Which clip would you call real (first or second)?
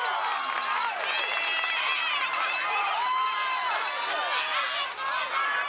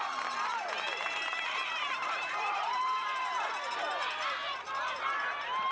first